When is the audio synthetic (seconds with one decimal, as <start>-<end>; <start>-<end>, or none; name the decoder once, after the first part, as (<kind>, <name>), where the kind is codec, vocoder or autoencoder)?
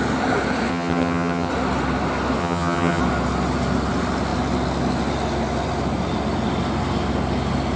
0.7-1.5 (vocoder, HiFi-GAN); 2.4-3.0